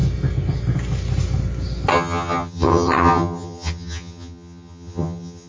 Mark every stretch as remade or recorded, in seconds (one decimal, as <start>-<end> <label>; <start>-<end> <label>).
0.0-1.9 recorded; 1.9-5.5 remade